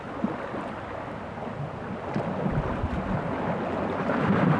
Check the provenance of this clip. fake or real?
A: real